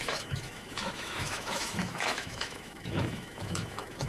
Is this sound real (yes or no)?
no